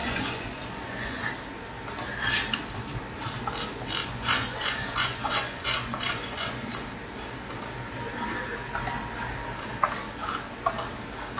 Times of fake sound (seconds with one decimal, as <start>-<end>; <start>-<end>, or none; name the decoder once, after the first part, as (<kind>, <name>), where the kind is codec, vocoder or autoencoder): 0.0-1.3 (vocoder, Vocos); 4.0-6.7